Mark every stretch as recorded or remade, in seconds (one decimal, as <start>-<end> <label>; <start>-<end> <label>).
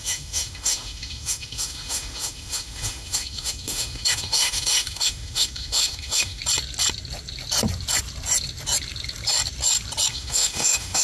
0.0-6.4 remade; 6.4-10.1 recorded; 10.1-11.0 remade